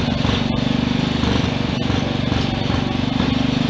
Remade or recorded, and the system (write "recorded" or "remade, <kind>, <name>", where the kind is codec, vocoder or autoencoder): recorded